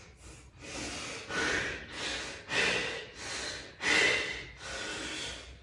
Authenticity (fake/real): real